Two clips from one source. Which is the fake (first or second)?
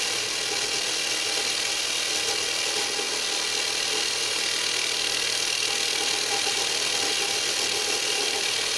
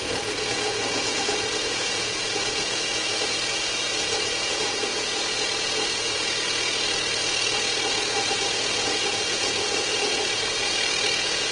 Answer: second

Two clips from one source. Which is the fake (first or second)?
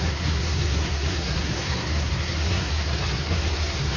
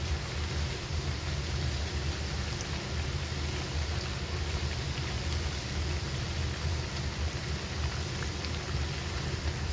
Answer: first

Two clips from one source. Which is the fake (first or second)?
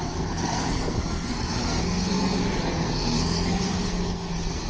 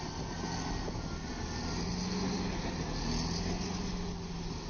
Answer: first